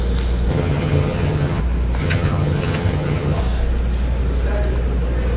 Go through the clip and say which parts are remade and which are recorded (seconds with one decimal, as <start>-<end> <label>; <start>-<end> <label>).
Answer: 0.0-0.5 recorded; 0.5-1.6 remade; 1.6-2.0 recorded; 2.0-3.4 remade; 3.4-5.4 recorded